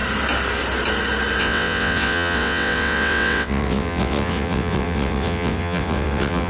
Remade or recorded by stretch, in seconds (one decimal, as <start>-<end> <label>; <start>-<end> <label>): 0.0-1.4 recorded; 1.4-6.5 remade